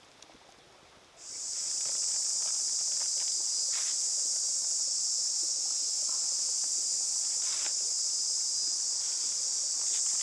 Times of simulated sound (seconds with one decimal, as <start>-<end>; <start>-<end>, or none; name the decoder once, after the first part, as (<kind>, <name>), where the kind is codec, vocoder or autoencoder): none